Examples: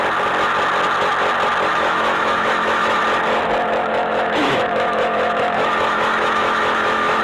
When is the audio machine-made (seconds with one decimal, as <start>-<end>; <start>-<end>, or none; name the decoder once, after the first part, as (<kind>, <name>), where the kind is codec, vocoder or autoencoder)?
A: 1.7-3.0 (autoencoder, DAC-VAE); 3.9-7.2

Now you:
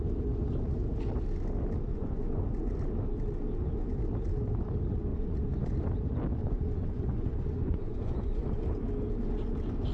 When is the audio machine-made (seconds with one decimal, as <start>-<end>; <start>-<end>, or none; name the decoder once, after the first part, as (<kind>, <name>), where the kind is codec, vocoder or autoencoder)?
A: 1.9-2.4 (vocoder, Vocos); 5.1-5.6; 6.4-8.6

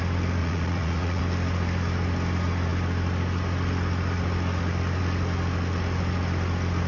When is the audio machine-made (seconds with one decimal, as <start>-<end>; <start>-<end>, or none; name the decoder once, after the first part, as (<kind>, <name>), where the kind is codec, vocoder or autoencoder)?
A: 0.4-1.2 (vocoder, Vocos)